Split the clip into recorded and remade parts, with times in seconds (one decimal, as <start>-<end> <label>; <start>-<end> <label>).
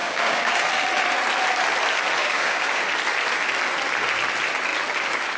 0.0-0.5 remade; 0.5-2.2 recorded; 2.2-2.8 remade; 2.8-5.4 recorded